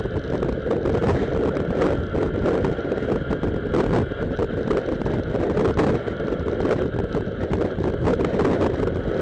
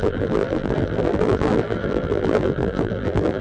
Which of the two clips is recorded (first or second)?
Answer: first